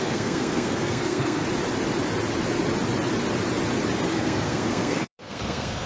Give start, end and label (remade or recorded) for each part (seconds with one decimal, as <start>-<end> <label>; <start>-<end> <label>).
0.0-1.4 remade; 1.4-4.1 recorded; 4.1-5.9 remade